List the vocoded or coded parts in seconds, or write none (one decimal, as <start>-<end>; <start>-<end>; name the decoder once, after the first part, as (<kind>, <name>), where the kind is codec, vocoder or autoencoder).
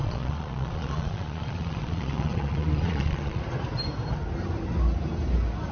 0.0-3.4 (vocoder, Vocos)